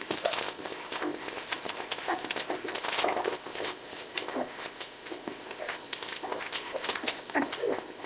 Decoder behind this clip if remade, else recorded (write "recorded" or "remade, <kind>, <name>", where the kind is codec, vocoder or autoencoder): remade, codec, ZipCodec